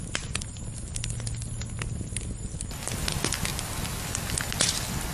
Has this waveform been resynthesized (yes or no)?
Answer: no